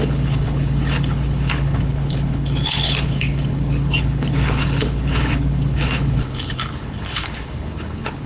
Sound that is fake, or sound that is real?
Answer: fake